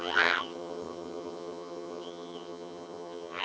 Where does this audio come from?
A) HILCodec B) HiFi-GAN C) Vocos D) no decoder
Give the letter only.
B